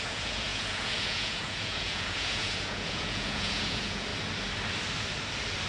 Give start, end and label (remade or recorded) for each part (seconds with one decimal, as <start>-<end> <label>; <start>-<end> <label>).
0.0-4.1 remade; 4.1-5.7 recorded